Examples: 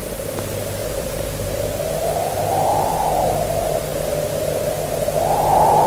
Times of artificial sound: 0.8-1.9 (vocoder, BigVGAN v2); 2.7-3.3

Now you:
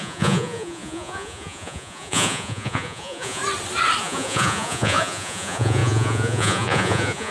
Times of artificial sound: 0.0-3.4 (vocoder, Vocos); 4.0-7.3

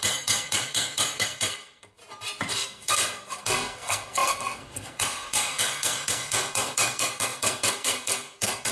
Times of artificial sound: 0.0-2.0 (codec, SNAC); 2.5-8.7